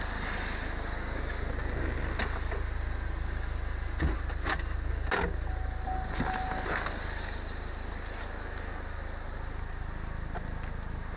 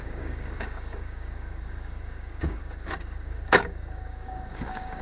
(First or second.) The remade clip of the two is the second